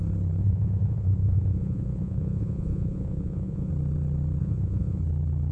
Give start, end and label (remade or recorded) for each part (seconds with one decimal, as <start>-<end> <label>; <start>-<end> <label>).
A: 0.0-0.4 recorded; 0.4-3.7 remade; 3.7-4.4 recorded; 4.4-5.0 remade; 5.0-5.5 recorded